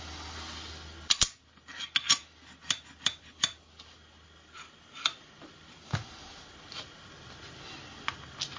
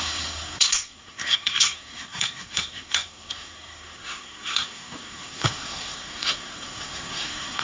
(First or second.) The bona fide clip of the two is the first